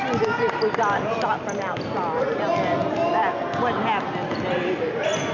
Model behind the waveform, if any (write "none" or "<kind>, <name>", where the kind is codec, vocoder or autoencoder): none